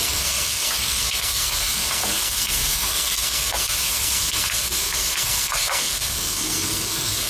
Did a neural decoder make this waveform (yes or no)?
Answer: yes